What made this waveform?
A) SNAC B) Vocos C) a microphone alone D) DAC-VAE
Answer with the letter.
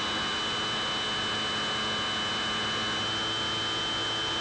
C